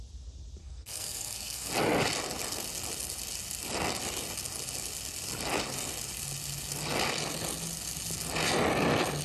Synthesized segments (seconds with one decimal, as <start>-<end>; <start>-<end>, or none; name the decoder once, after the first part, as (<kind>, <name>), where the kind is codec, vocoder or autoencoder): 0.6-1.7 (codec, SNAC)